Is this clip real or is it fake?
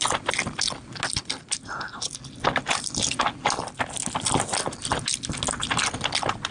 real